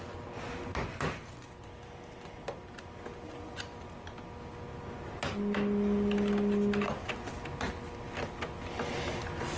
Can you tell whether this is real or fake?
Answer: real